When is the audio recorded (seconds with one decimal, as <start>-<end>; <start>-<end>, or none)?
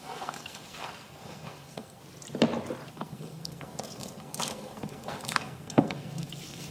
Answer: 2.0-2.9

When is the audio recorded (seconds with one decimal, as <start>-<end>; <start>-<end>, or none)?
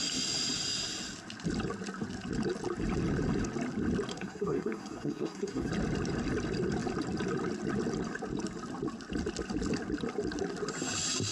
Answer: 0.0-4.1; 5.7-11.3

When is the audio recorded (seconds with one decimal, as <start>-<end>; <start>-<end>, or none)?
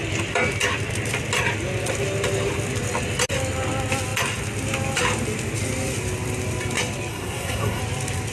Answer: 0.0-7.1; 7.8-8.3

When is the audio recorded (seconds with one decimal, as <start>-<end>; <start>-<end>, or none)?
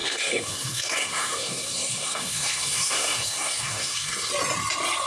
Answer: 4.3-5.1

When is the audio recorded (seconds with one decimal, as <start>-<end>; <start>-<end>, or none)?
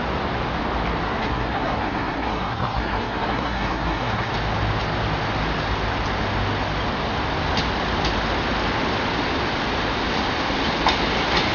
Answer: 0.0-1.2; 4.3-11.5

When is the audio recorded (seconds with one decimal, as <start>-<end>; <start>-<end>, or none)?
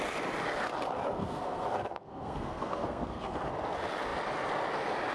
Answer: 0.0-1.2; 3.5-5.1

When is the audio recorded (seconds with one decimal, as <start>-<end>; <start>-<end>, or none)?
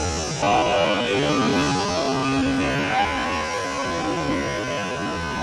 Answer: 0.0-5.4